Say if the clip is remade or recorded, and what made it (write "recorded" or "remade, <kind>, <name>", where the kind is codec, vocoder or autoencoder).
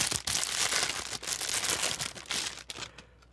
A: recorded